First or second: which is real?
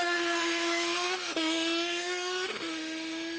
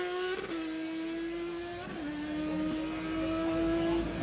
second